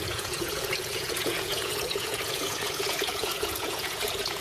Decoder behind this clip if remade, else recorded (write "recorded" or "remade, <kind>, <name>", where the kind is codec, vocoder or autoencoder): remade, vocoder, Vocos